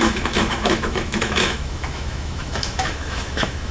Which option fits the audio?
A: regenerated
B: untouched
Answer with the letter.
A